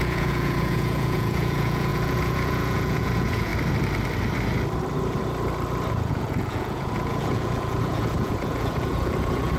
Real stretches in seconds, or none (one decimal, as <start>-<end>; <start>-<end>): 3.5-5.9